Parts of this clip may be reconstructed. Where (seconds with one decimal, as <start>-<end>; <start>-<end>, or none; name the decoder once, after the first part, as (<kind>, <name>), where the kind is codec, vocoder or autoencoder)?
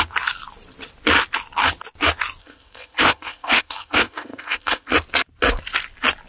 2.4-4.9 (codec, ZipCodec)